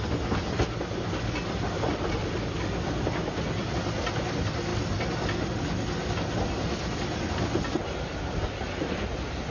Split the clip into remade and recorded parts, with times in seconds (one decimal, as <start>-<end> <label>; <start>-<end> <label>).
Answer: 0.0-9.5 recorded